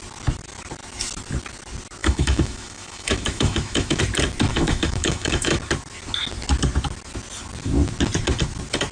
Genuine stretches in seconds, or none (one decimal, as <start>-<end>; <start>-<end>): 0.0-2.0; 4.0-4.5; 5.6-8.9